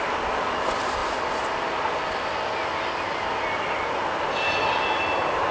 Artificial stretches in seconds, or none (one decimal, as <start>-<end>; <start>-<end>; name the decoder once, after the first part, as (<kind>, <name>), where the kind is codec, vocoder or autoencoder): none